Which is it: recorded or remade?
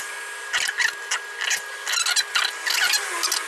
recorded